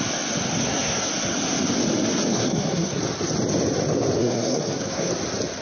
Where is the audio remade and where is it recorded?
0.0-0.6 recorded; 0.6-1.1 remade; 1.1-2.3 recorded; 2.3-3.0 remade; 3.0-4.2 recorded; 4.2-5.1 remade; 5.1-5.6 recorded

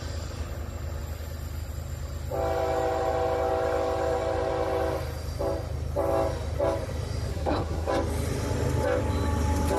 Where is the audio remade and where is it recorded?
0.0-7.3 recorded; 7.3-7.9 remade; 7.9-9.8 recorded